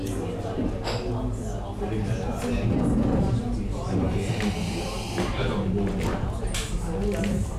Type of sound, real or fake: real